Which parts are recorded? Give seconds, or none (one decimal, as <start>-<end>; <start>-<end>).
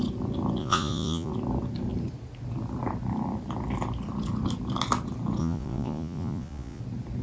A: 0.0-0.6; 1.3-5.4; 6.8-7.2